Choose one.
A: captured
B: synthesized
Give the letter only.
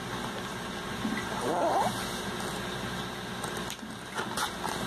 A